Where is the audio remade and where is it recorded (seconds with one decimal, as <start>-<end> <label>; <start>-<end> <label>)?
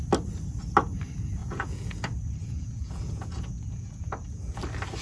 0.0-1.4 recorded; 1.4-2.0 remade; 2.0-2.4 recorded; 2.4-4.6 remade; 4.6-5.0 recorded